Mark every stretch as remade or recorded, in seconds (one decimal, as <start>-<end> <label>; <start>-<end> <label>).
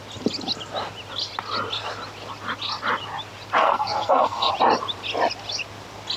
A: 0.0-3.6 recorded; 3.6-4.5 remade; 4.5-6.2 recorded